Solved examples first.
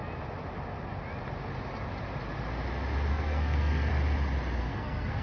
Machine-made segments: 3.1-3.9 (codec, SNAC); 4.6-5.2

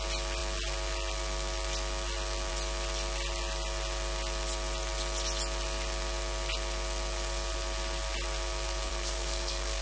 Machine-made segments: 8.9-9.8 (codec, SNAC)

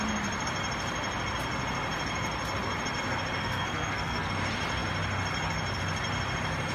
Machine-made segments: 3.4-4.3 (codec, SNAC)